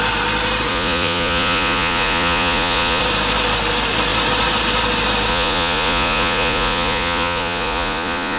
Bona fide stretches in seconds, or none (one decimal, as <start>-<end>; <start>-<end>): 0.0-0.7; 3.0-5.3